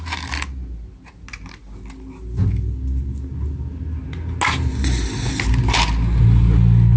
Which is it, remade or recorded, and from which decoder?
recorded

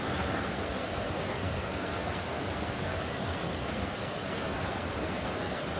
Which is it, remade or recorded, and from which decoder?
remade, codec, SNAC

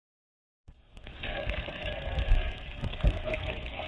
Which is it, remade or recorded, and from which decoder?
remade, codec, SNAC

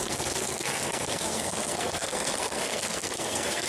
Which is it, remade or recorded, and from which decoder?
remade, codec, SNAC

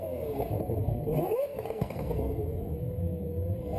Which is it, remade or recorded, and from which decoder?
remade, codec, SNAC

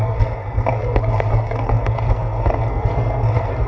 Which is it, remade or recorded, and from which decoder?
remade, codec, SNAC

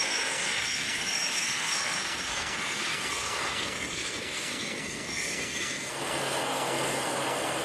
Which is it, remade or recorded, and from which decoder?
remade, codec, SNAC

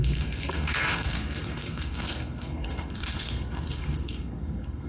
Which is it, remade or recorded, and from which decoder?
remade, codec, SNAC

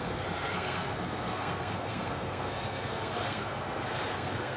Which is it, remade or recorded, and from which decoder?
remade, codec, SNAC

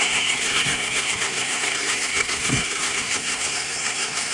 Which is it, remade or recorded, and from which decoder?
remade, codec, SNAC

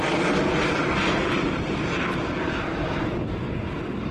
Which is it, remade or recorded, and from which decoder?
recorded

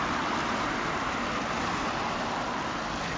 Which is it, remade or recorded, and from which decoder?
recorded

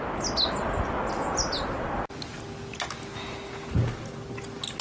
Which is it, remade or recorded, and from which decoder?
recorded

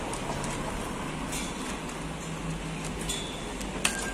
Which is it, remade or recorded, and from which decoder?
recorded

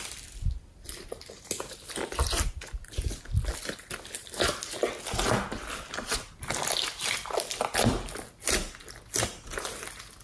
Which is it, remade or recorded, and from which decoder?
recorded